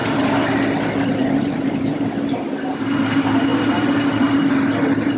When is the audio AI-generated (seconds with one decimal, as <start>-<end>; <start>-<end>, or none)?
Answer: 0.0-0.6; 1.2-2.3; 3.5-4.5